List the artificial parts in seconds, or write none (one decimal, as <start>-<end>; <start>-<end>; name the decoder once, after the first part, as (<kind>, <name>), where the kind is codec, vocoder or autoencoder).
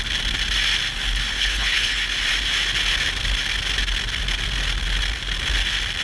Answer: 1.3-2.0 (codec, HILCodec)